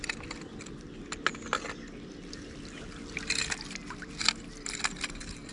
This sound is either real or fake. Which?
real